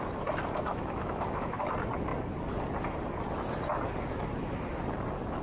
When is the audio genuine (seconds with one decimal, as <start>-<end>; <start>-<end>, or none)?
0.0-0.7; 1.6-5.4